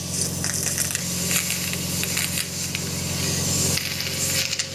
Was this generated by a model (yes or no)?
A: no